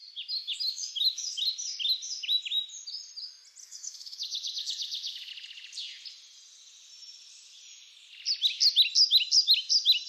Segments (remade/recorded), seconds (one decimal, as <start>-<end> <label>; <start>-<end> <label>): 0.0-0.4 recorded; 0.4-1.4 remade; 1.4-3.6 recorded; 3.6-5.3 remade; 5.3-10.1 recorded